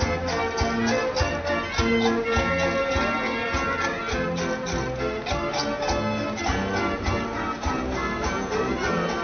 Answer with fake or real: real